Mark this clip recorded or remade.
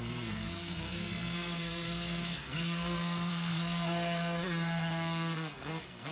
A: remade